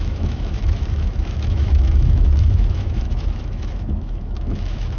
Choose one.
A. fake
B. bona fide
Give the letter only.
A